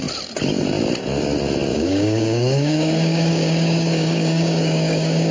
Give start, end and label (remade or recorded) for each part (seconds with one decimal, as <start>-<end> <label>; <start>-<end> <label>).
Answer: 0.0-1.7 recorded; 1.7-5.3 remade